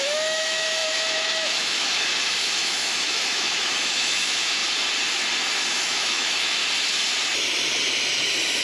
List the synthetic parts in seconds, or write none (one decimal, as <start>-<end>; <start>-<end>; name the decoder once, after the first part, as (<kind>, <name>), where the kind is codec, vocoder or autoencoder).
0.0-4.6 (autoencoder, DAC-VAE); 5.8-6.6